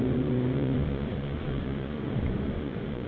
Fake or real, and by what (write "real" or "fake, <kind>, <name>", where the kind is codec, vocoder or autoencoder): fake, vocoder, Vocos